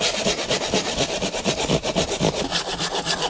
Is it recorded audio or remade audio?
recorded